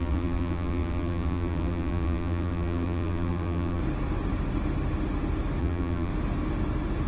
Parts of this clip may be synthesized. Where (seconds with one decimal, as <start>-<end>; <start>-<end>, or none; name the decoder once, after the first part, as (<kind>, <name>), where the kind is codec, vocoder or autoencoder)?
0.0-3.8 (vocoder, BigVGAN v2); 5.6-6.1